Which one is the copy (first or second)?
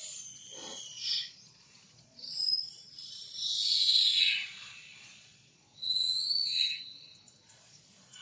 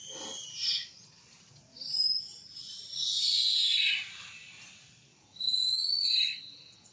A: first